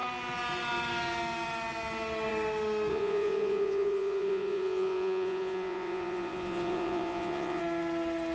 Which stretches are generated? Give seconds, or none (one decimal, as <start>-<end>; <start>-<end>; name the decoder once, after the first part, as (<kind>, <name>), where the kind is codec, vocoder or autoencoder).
2.9-7.6 (vocoder, Vocos)